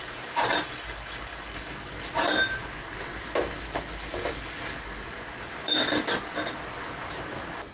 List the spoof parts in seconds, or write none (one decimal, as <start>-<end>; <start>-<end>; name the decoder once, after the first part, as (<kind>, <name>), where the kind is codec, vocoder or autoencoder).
5.6-6.2 (codec, DAC)